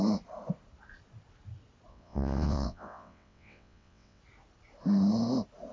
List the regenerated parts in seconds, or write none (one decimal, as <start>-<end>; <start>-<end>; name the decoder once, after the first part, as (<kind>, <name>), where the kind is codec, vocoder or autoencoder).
1.9-4.2 (vocoder, WaveNeXt)